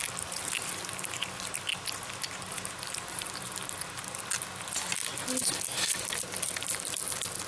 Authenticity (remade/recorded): recorded